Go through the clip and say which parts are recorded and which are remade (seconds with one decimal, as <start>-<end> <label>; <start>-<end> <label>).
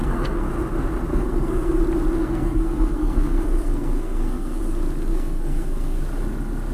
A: 0.0-0.5 remade; 0.5-1.1 recorded; 1.1-1.8 remade; 1.8-2.2 recorded; 2.2-4.6 remade; 4.6-5.1 recorded; 5.1-6.0 remade; 6.0-6.7 recorded